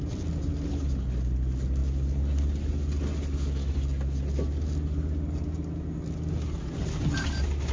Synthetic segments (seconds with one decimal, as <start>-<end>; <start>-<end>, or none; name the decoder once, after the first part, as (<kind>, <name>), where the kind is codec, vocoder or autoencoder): none